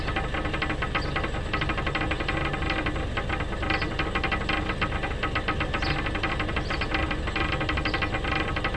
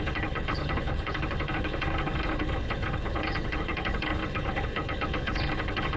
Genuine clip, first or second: first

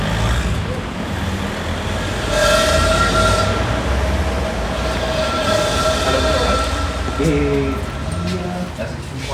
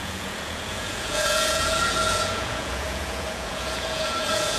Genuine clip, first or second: first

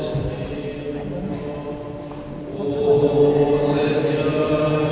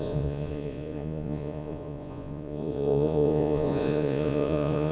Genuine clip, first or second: first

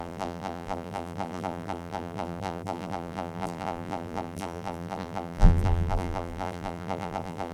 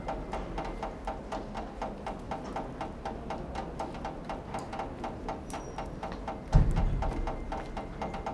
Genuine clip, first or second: second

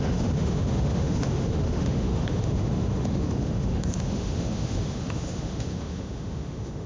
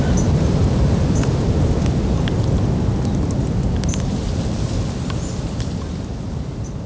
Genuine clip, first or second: second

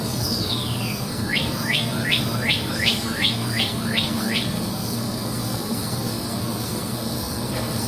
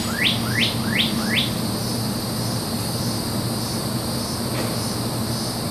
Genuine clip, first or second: second